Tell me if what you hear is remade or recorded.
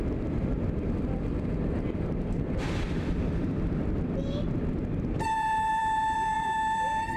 remade